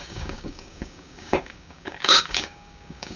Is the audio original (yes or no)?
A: no